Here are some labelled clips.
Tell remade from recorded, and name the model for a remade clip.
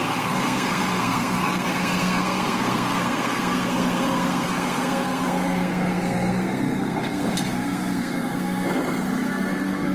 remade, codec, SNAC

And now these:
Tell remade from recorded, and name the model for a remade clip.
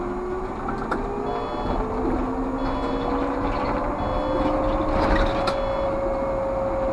recorded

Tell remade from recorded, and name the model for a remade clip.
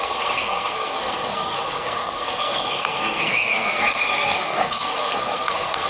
remade, codec, SNAC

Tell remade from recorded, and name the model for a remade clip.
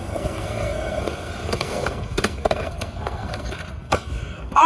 remade, codec, SNAC